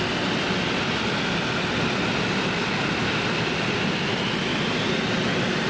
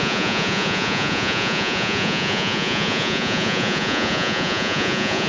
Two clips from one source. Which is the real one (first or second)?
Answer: first